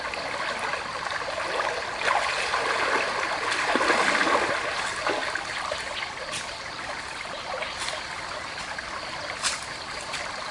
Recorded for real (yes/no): yes